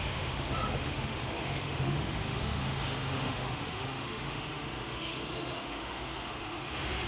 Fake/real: fake